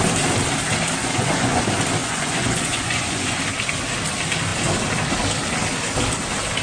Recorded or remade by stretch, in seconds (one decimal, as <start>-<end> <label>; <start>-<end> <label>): 0.0-1.0 recorded; 1.0-1.6 remade; 1.6-2.0 recorded; 2.0-3.4 remade; 3.4-6.6 recorded